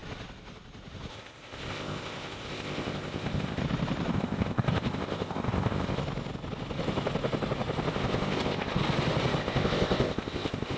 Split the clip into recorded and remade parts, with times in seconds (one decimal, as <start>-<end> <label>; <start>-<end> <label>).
0.0-1.1 recorded; 1.1-3.6 remade; 3.6-4.1 recorded; 4.1-6.0 remade; 6.0-7.9 recorded; 7.9-8.8 remade; 8.8-9.4 recorded; 9.4-10.8 remade